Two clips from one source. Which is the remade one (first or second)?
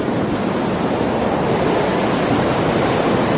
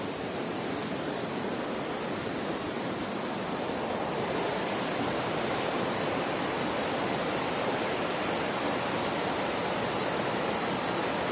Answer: second